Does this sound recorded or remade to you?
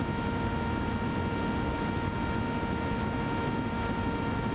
recorded